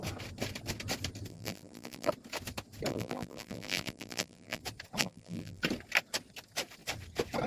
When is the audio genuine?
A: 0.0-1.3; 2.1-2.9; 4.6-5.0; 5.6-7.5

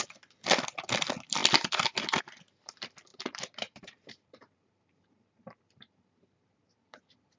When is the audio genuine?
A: 0.0-3.1; 7.0-7.4

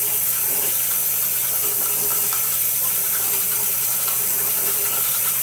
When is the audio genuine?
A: 0.0-2.8; 4.8-5.4

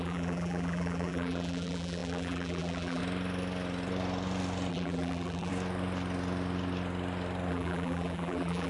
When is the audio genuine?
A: 3.0-4.7; 5.5-7.5

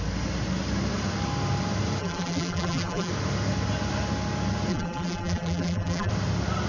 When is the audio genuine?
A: 0.0-2.0; 3.1-4.7; 6.1-6.7